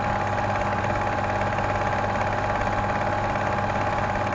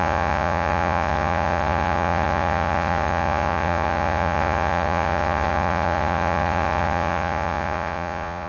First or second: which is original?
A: first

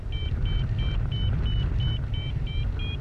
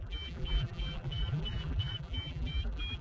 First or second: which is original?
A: first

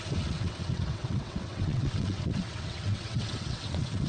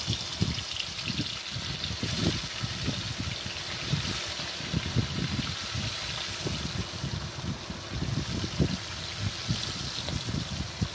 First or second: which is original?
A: second